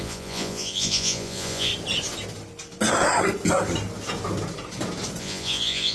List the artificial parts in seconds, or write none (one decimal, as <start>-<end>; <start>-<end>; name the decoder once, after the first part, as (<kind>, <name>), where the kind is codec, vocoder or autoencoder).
0.0-1.7 (vocoder, Vocos); 5.2-5.9